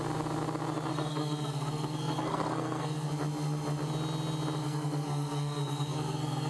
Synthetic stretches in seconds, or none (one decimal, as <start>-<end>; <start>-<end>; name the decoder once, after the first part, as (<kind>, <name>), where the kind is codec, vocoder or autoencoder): 0.9-3.1 (codec, SNAC); 4.6-6.5